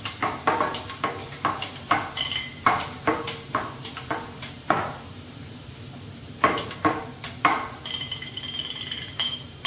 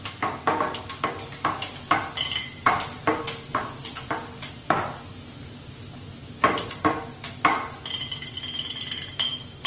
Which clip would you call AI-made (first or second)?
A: first